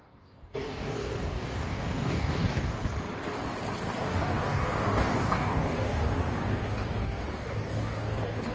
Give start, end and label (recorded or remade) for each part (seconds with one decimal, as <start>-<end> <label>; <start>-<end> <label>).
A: 0.0-2.8 remade; 2.8-4.0 recorded; 4.0-8.5 remade